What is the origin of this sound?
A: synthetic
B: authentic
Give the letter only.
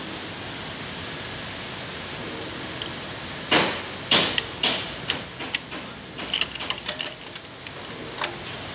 B